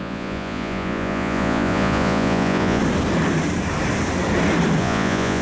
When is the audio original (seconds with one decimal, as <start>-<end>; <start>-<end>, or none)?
2.8-4.8